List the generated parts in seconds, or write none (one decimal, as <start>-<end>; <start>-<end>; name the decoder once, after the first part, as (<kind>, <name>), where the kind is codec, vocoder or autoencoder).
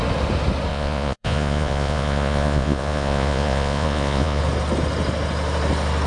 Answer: 0.7-4.4 (vocoder, Vocos)